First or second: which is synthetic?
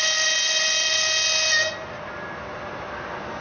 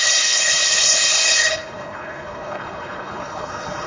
second